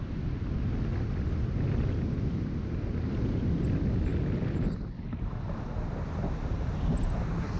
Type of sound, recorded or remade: recorded